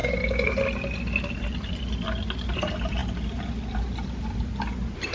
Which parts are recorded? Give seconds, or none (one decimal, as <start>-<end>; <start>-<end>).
0.0-5.1